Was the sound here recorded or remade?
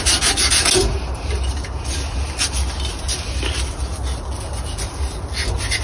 recorded